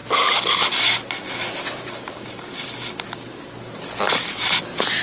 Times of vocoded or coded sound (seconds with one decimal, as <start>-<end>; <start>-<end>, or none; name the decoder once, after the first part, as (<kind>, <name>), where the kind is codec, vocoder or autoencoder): none